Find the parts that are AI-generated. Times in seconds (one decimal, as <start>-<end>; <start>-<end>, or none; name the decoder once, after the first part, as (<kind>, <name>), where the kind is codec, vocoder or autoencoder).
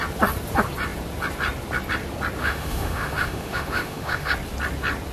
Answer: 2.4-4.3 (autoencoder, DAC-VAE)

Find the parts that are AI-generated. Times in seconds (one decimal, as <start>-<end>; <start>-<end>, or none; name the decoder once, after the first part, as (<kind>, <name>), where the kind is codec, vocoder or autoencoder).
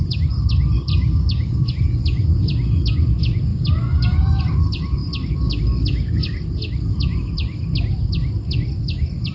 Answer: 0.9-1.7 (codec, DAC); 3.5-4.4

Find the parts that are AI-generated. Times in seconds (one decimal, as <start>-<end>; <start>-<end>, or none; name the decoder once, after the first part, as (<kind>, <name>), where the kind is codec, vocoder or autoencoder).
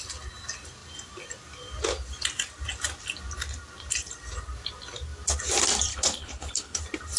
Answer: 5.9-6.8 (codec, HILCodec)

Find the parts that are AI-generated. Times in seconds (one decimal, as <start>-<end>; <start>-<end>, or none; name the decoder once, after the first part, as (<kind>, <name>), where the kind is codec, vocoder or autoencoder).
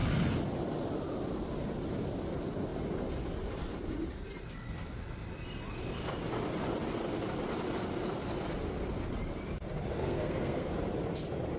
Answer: 10.0-10.7 (codec, SNAC)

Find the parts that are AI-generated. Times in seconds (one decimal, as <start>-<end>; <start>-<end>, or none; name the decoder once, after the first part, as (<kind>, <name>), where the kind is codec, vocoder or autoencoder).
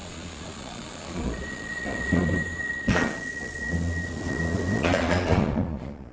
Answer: 0.0-6.1 (vocoder, Vocos)